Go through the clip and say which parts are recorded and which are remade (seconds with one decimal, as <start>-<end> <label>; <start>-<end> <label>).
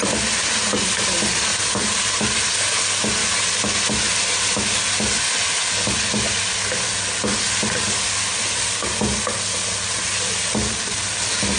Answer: 0.0-11.6 recorded